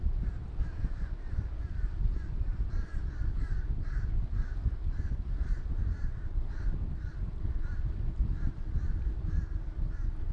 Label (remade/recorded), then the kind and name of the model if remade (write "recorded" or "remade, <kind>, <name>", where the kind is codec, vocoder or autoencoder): recorded